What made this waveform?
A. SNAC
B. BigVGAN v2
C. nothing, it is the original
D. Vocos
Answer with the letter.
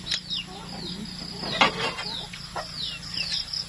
C